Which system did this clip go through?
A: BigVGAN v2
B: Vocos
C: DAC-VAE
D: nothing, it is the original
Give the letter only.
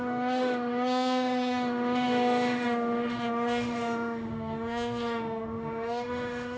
C